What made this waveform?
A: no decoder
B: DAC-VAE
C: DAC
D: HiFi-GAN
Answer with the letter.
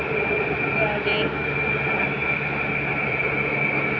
A